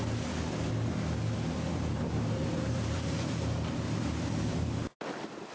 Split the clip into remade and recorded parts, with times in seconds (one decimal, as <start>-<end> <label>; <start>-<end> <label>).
0.0-1.7 recorded; 1.7-4.7 remade; 4.7-5.5 recorded